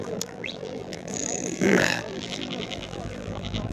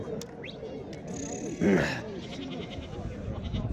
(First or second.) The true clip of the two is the second